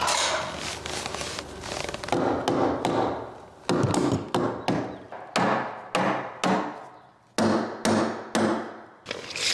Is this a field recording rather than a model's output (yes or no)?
yes